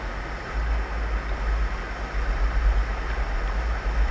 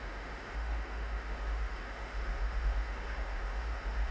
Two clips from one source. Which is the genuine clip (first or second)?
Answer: first